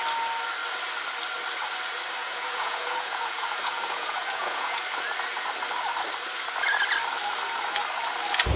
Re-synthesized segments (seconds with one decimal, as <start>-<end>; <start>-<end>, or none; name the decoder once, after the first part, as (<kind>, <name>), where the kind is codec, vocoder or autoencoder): 2.2-4.8 (vocoder, Vocos)